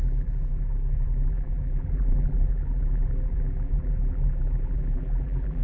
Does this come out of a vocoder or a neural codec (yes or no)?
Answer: yes